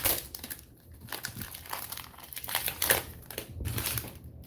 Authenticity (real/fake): real